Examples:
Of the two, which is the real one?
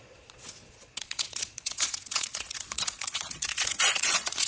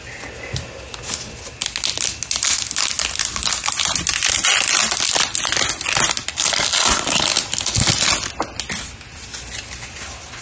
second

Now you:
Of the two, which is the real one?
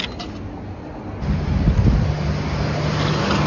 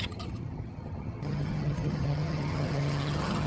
first